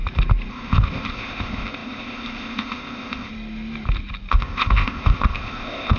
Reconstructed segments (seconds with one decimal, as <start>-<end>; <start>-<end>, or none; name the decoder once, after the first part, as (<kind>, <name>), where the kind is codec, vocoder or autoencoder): 0.5-3.3 (codec, ZipCodec); 4.3-6.0